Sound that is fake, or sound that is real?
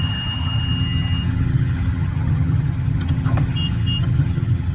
fake